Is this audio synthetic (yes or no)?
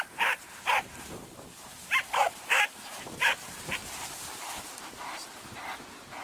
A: yes